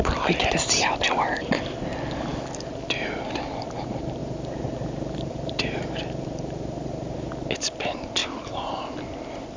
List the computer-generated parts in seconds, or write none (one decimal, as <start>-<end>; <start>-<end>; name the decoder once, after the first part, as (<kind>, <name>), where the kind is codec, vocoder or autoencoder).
4.2-7.3 (vocoder, BigVGAN v2); 8.2-8.9